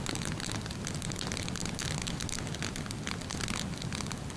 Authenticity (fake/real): real